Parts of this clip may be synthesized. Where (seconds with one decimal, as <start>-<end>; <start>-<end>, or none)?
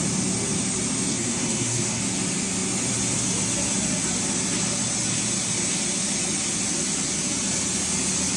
1.1-2.0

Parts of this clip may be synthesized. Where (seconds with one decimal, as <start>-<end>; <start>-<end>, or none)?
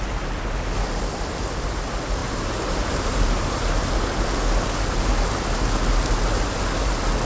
2.2-3.8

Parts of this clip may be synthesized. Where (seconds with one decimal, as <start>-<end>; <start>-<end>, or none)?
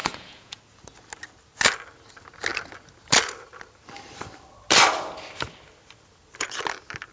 0.0-0.6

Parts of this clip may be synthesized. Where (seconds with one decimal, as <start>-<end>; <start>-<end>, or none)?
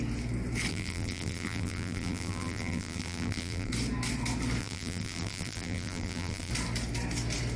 0.7-3.7; 4.6-6.5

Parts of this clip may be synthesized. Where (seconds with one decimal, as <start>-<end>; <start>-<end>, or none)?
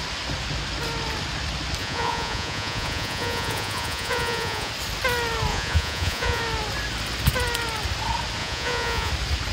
1.8-4.7; 5.5-6.4; 8.4-9.1